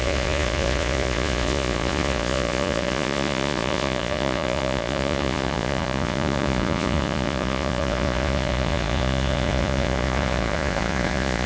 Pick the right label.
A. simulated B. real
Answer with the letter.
A